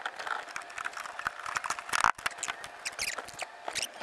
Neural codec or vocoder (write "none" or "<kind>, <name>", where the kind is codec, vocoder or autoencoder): none